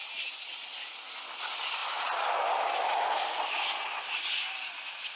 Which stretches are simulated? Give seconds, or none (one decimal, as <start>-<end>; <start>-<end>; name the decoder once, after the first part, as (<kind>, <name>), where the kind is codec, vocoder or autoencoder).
1.8-5.2 (vocoder, BigVGAN v2)